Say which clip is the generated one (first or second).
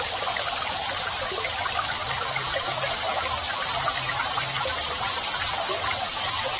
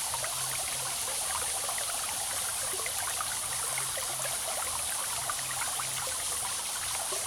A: first